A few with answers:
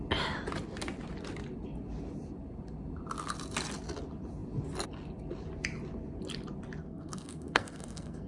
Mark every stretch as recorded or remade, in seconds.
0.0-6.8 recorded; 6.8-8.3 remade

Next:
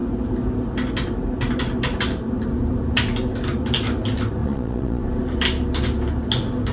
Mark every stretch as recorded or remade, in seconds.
0.0-4.4 recorded; 4.4-5.0 remade; 5.0-6.7 recorded

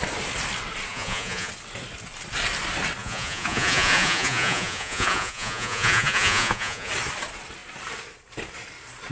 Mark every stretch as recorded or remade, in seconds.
0.0-0.9 recorded; 0.9-1.5 remade; 1.5-3.0 recorded; 3.0-6.9 remade; 6.9-9.1 recorded

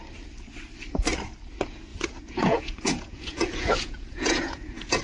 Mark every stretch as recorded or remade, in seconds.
0.0-1.9 recorded; 1.9-5.0 remade

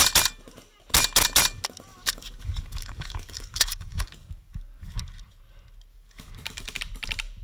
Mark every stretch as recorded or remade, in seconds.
0.0-1.9 recorded; 1.9-5.0 remade; 5.0-5.9 recorded; 5.9-6.8 remade; 6.8-7.4 recorded

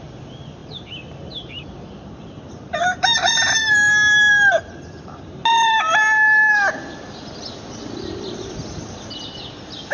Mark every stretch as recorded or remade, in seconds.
0.0-0.6 recorded; 0.6-3.9 remade; 3.9-5.9 recorded; 5.9-6.5 remade; 6.5-9.9 recorded